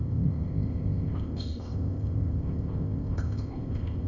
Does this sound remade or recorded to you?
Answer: remade